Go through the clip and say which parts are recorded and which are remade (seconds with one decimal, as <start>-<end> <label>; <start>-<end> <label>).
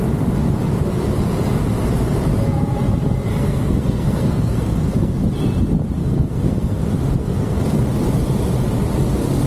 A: 0.0-3.3 recorded; 3.3-5.2 remade; 5.2-6.0 recorded; 6.0-6.8 remade; 6.8-7.2 recorded; 7.2-7.8 remade; 7.8-9.5 recorded